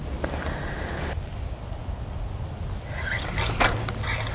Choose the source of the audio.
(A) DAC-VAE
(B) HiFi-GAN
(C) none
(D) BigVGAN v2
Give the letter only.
C